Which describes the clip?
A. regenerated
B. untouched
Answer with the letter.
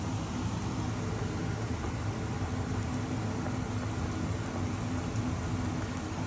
B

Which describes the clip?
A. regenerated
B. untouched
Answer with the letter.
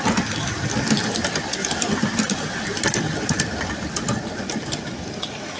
B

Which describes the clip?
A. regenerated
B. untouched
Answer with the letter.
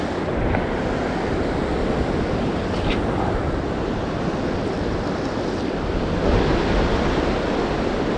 B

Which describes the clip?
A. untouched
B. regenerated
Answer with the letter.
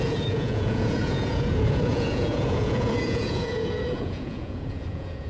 B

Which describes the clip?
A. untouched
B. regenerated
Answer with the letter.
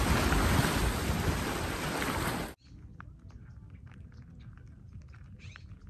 A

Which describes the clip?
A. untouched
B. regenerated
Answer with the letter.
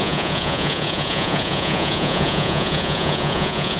B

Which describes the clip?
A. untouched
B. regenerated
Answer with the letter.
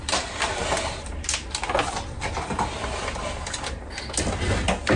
A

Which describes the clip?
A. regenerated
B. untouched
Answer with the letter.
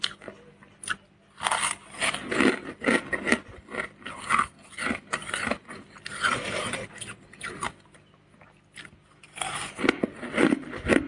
B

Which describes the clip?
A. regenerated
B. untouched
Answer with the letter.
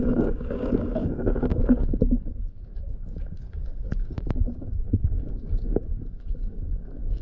A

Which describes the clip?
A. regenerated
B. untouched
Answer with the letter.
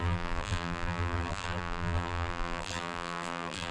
A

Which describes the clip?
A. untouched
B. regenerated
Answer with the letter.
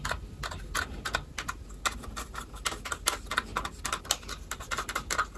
A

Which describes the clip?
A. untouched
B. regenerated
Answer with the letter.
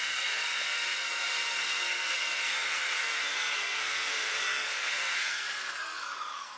B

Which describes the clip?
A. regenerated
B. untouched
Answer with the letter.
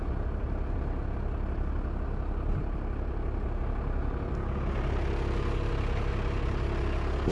B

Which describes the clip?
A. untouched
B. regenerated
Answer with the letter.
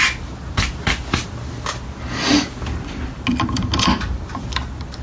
A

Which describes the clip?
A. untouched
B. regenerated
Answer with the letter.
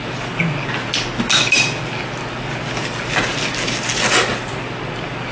A